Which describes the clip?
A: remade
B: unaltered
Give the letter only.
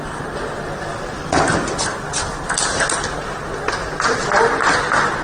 B